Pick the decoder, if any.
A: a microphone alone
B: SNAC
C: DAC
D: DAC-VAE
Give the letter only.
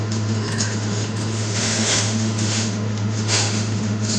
D